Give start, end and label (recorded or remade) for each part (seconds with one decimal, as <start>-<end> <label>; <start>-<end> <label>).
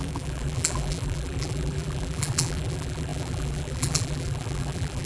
0.0-5.1 remade